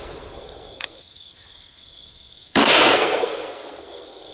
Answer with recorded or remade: remade